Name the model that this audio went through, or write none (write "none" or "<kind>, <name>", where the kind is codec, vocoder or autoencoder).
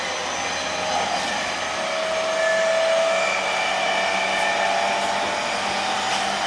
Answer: none